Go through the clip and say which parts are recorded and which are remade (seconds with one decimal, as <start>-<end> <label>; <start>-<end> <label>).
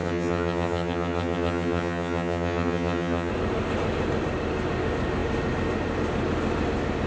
0.0-3.3 remade; 3.3-7.1 recorded